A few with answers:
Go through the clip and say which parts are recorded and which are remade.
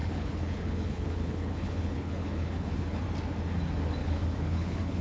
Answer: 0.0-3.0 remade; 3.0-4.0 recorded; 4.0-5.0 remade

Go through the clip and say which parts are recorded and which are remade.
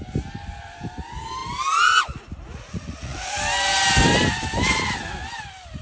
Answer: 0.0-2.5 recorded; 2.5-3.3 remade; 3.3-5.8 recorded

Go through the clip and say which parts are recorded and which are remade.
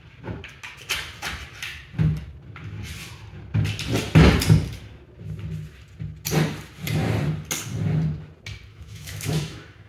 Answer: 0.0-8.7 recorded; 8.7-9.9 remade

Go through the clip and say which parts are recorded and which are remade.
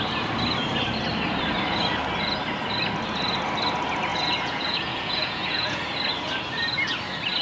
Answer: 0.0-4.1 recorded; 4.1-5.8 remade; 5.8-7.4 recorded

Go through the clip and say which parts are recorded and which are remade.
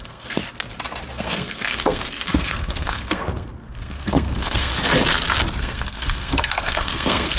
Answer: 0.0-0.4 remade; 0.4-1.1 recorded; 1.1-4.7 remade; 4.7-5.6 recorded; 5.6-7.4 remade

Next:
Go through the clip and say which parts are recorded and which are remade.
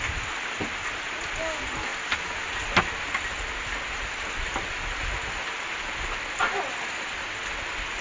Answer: 0.0-8.0 recorded